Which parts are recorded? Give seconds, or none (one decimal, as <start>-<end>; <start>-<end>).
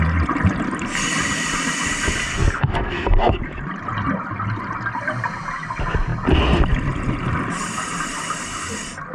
0.0-2.3; 3.4-9.1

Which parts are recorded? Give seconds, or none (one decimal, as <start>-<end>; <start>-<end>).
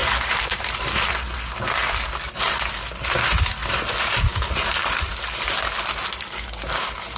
1.1-7.2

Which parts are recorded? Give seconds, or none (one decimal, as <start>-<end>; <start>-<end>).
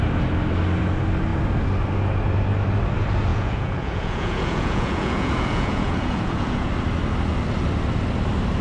0.0-3.3; 6.7-8.6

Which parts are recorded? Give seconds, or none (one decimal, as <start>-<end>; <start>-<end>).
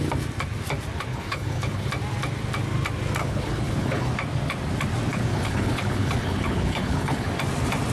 0.0-1.1; 1.9-3.2; 4.1-5.1; 7.3-7.9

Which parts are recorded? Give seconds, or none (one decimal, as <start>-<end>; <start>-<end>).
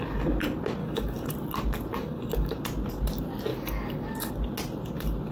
0.0-0.8; 1.3-2.0; 2.6-3.5; 4.3-5.3